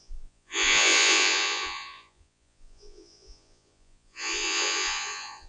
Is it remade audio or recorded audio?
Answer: remade